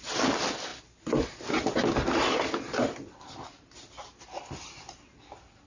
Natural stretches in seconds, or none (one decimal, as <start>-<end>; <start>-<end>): 0.0-5.7